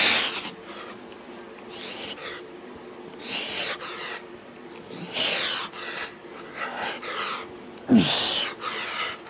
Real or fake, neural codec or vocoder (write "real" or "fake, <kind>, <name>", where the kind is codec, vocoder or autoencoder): real